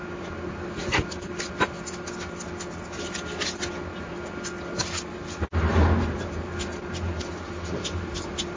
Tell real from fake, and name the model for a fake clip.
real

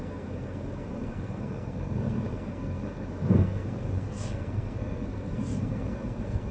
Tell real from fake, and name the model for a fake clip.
fake, codec, SNAC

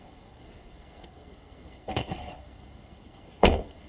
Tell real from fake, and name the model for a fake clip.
fake, codec, SNAC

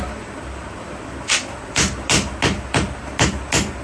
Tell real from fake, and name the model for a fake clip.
real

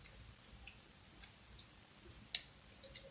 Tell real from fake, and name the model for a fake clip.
real